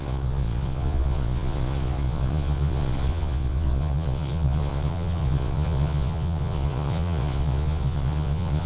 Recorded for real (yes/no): no